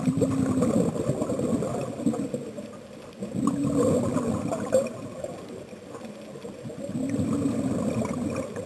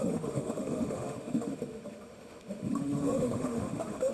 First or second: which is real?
first